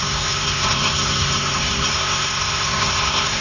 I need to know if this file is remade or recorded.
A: remade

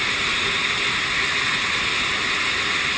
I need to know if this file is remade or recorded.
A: recorded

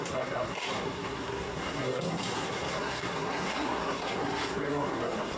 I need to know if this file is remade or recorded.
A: remade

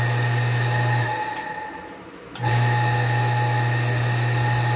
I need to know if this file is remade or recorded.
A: recorded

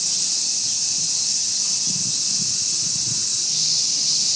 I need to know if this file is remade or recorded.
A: recorded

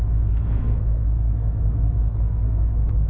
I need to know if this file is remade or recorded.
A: remade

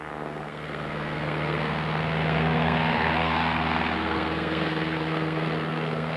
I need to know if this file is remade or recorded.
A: remade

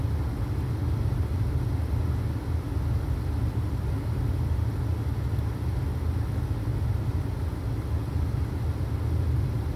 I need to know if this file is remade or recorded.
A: recorded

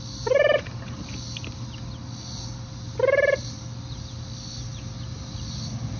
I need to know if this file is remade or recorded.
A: recorded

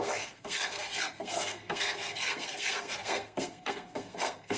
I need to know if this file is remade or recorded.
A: remade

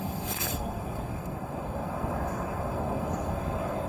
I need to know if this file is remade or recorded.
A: remade